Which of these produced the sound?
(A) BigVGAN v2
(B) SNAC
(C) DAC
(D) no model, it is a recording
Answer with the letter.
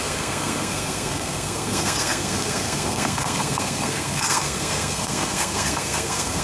B